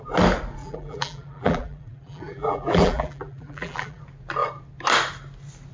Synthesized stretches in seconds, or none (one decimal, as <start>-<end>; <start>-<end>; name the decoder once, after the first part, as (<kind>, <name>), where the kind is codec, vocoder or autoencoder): 0.6-4.0 (vocoder, BigVGAN v2)